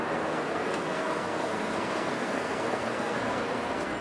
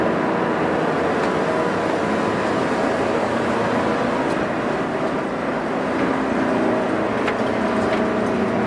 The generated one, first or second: first